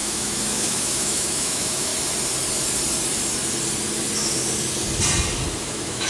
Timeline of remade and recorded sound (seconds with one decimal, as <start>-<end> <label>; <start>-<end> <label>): 0.0-1.9 remade; 1.9-5.6 recorded; 5.6-6.1 remade